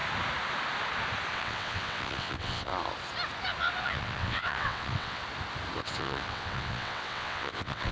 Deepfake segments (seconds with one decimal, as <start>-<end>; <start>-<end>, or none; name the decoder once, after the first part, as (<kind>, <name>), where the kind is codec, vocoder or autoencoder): 1.3-2.7 (vocoder, WaveNeXt); 3.8-5.2; 5.8-7.9